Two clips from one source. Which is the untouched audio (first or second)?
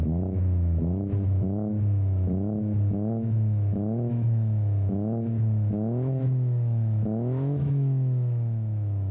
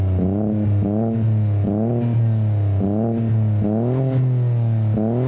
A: second